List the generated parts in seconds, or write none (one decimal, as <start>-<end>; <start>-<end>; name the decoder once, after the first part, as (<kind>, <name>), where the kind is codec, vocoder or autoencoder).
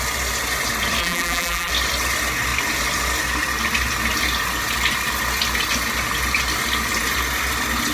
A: 1.0-1.7 (vocoder, BigVGAN v2)